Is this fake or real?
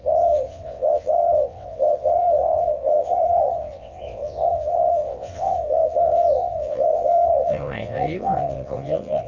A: fake